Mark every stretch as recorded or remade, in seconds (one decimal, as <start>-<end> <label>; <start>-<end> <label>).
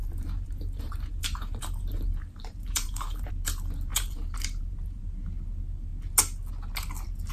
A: 0.0-3.3 remade; 3.3-3.9 recorded; 3.9-5.0 remade; 5.0-7.3 recorded